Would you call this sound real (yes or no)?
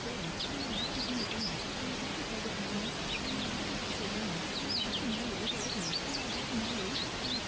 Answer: yes